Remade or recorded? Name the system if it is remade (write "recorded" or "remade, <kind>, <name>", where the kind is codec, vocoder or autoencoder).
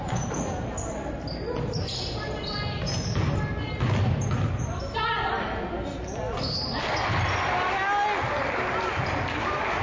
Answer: recorded